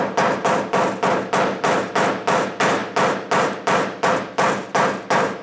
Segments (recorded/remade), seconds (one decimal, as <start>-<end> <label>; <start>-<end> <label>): 0.0-5.4 recorded